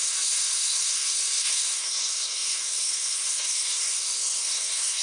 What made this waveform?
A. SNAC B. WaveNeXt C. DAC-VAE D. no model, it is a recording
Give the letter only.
A